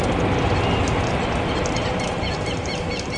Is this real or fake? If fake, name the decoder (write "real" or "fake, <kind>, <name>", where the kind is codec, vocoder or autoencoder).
real